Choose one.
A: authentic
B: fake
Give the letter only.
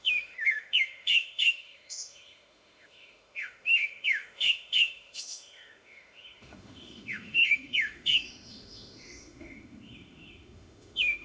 B